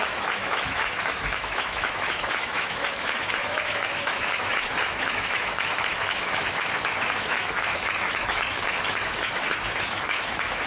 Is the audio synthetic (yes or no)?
yes